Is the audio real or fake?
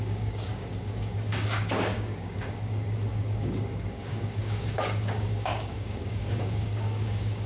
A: fake